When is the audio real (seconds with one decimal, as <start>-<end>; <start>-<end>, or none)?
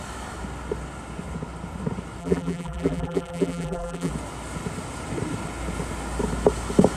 0.0-2.2; 4.1-7.0